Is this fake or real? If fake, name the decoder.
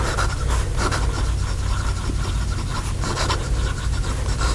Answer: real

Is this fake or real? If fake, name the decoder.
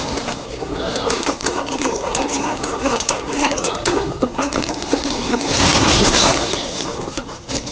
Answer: fake, codec, SNAC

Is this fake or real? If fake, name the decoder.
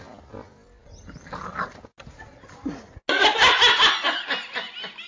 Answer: real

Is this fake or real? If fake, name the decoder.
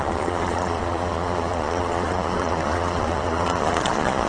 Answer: fake, vocoder, Vocos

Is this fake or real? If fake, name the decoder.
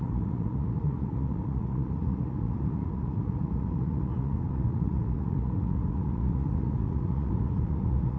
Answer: fake, vocoder, Vocos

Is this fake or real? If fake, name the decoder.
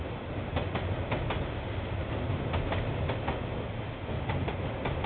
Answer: real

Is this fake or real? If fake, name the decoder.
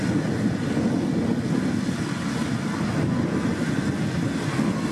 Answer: real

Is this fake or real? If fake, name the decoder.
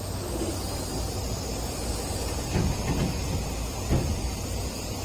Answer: real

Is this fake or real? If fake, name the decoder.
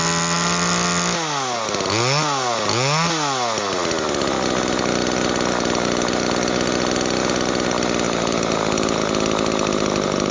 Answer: real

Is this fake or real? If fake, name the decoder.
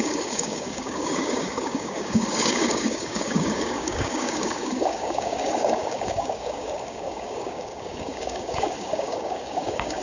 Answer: fake, codec, DAC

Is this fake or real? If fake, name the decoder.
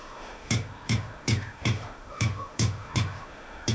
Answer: fake, autoencoder, DAC-VAE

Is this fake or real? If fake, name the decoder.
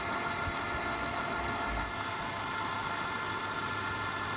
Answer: real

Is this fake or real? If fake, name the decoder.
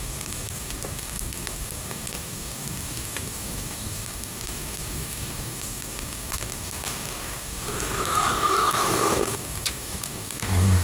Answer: fake, codec, DAC